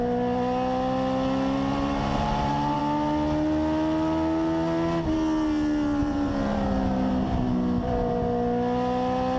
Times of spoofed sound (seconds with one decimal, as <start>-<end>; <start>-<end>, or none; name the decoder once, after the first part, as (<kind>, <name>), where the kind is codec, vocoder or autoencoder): 1.7-2.8 (vocoder, BigVGAN v2); 6.0-7.1